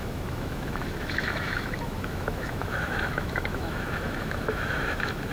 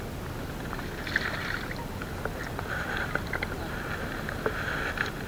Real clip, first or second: second